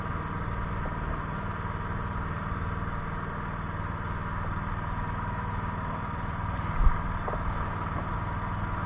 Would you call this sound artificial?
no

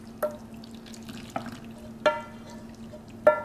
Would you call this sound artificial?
no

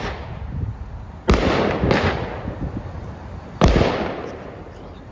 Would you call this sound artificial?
no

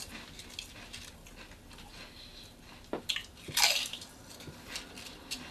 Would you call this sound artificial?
no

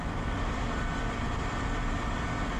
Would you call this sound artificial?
yes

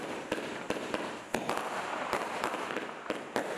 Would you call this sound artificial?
yes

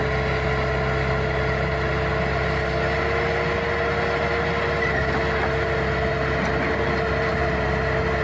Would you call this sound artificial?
no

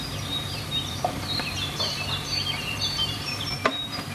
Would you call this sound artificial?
yes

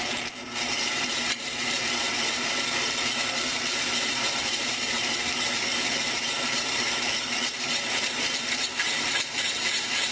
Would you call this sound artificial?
yes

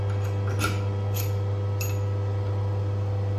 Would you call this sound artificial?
no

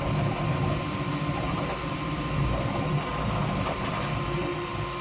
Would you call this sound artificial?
no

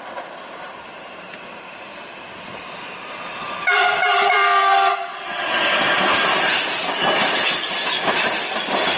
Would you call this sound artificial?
yes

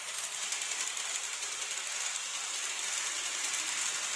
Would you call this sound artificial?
no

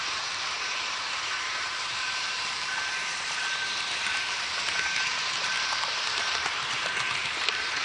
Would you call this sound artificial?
yes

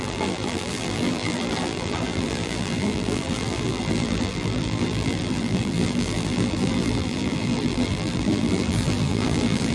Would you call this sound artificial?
yes